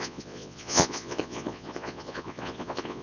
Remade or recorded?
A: remade